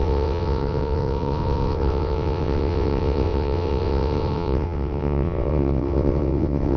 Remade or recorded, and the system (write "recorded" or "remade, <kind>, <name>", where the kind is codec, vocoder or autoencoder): remade, vocoder, WaveNeXt